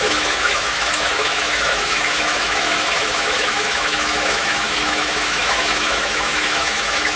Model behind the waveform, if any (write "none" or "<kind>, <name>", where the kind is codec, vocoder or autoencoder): autoencoder, DAC-VAE